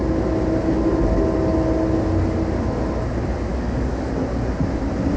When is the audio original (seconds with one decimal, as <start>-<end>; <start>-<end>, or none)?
0.0-3.5; 4.1-5.2